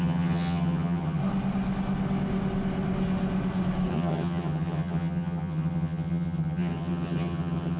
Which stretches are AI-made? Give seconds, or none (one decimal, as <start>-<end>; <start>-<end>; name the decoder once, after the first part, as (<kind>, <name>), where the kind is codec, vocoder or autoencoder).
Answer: 0.0-1.2 (vocoder, HiFi-GAN); 3.9-7.8